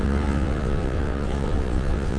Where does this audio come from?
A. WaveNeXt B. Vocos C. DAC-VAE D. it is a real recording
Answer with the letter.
A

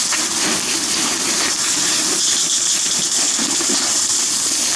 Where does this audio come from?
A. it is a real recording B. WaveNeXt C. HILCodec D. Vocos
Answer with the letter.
A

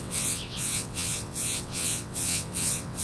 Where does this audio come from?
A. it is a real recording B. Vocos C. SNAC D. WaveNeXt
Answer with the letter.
D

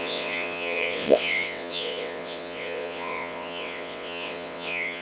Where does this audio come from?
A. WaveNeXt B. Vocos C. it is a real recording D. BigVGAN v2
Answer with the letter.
A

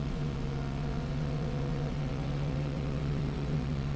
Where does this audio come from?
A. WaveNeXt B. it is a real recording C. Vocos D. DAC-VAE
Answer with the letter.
A